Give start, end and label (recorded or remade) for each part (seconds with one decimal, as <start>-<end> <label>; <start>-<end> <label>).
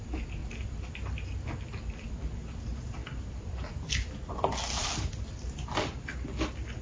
0.0-6.8 recorded